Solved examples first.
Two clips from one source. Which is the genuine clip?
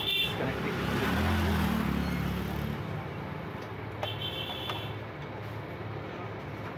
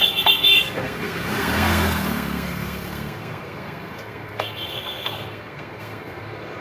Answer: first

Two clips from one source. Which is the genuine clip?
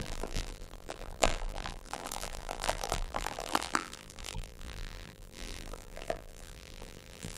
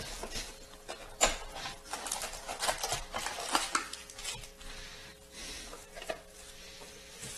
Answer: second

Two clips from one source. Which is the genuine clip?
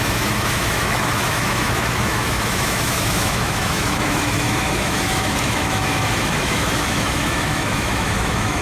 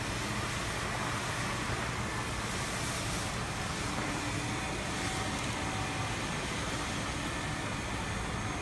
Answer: second